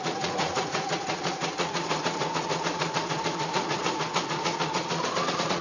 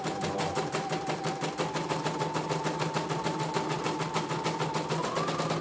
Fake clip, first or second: first